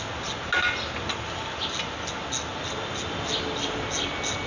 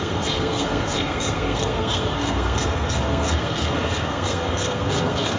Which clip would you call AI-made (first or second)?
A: second